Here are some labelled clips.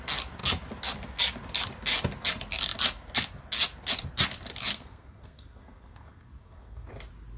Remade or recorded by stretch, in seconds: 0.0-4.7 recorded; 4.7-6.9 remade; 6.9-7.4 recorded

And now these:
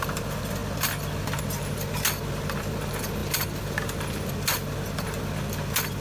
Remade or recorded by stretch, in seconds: 0.0-6.0 recorded

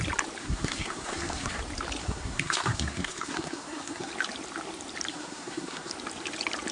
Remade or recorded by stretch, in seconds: 0.0-0.4 recorded; 0.4-1.6 remade; 1.6-2.0 recorded; 2.0-4.1 remade; 4.1-5.1 recorded; 5.1-5.9 remade; 5.9-6.7 recorded

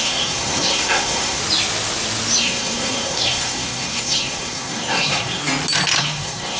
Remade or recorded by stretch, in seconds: 0.0-1.4 remade; 1.4-2.4 recorded; 2.4-5.4 remade; 5.4-6.0 recorded; 6.0-6.6 remade

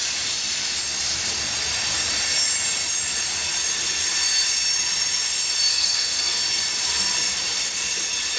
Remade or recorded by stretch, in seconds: 0.0-5.7 recorded; 5.7-6.4 remade; 6.4-8.4 recorded

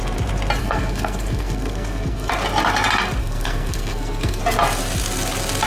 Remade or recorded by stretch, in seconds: 0.0-0.6 recorded; 0.6-2.3 remade; 2.3-3.2 recorded; 3.2-4.4 remade; 4.4-5.7 recorded

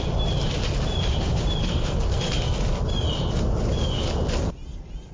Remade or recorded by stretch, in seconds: 0.0-1.6 recorded; 1.6-2.2 remade; 2.2-5.1 recorded